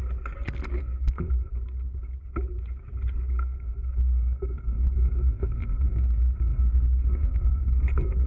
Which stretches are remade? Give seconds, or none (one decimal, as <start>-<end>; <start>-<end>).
0.8-1.5; 3.3-8.3